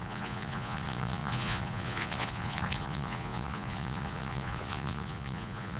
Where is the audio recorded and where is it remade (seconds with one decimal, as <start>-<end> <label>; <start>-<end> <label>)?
0.0-5.8 remade